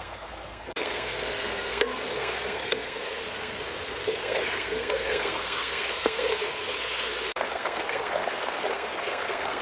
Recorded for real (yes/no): no